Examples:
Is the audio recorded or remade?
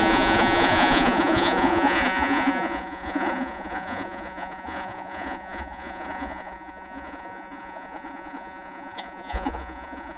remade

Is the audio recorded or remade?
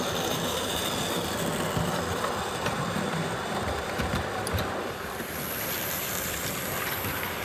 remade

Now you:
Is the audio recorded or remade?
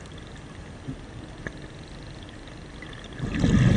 recorded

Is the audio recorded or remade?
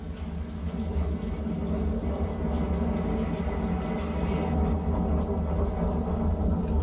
recorded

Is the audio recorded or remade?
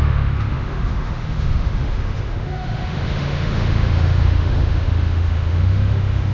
remade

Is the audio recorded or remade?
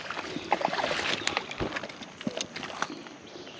recorded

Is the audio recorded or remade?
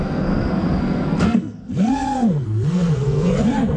remade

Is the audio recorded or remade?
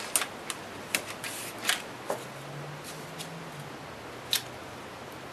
recorded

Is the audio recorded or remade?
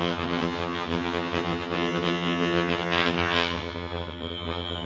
remade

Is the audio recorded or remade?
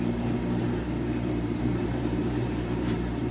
remade